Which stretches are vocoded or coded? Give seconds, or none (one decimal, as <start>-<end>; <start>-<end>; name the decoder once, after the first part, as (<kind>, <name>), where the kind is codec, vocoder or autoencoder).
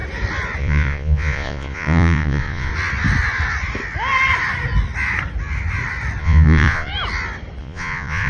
0.6-2.7 (vocoder, Vocos); 6.2-6.9; 7.6-8.3